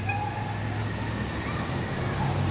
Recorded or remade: recorded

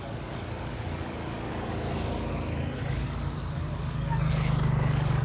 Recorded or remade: remade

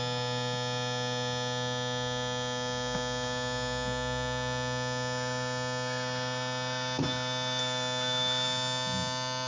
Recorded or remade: recorded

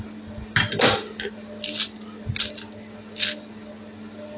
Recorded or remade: recorded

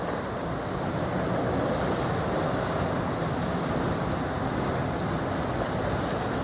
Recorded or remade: recorded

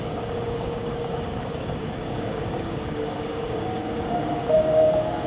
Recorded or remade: remade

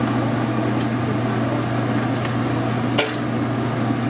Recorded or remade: recorded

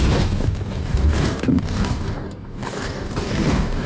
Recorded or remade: remade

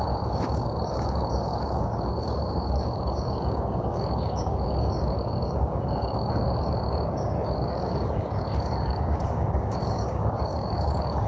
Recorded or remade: remade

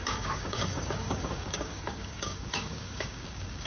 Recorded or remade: remade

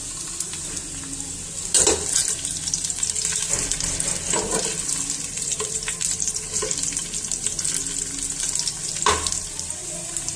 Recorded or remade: recorded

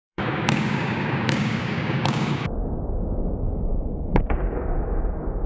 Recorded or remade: remade